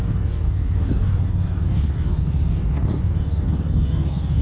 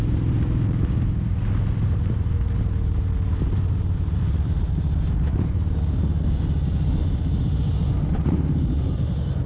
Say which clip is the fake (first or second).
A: first